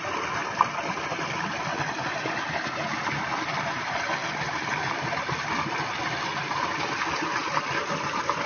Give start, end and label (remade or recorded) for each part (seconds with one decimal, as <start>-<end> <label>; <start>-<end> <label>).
0.0-8.5 recorded